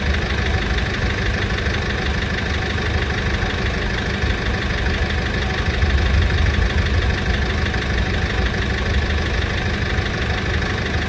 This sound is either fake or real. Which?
real